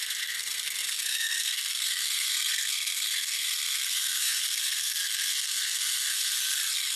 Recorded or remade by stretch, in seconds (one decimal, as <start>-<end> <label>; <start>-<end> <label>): 0.0-6.4 remade; 6.4-7.0 recorded